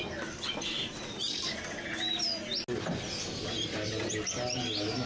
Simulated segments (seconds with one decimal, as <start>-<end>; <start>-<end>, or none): none